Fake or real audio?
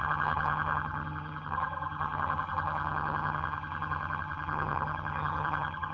fake